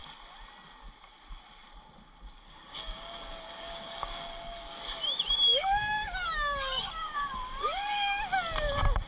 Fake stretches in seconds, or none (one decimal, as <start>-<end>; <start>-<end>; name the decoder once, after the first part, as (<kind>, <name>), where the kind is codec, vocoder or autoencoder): 2.4-4.8 (codec, DAC); 5.5-8.2